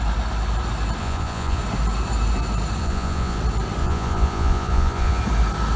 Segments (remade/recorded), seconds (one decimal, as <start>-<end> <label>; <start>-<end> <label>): 0.0-1.0 recorded; 1.0-1.6 remade; 1.6-2.8 recorded; 2.8-3.4 remade; 3.4-3.8 recorded; 3.8-5.2 remade; 5.2-5.8 recorded